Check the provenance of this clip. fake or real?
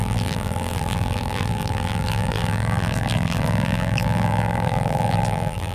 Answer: fake